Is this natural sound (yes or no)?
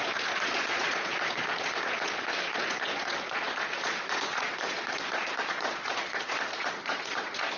no